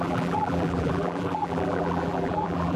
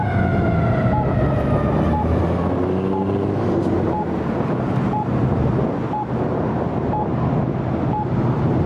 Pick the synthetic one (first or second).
first